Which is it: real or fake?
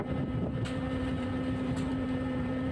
fake